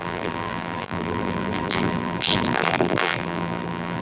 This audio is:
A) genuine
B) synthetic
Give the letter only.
B